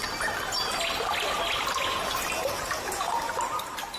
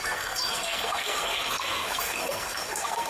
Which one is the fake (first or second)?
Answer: second